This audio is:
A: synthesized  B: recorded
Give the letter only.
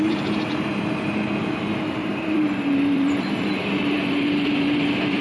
A